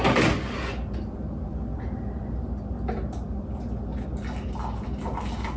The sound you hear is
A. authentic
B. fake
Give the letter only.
A